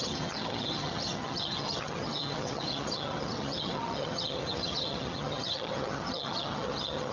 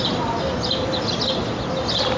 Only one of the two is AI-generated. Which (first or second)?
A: first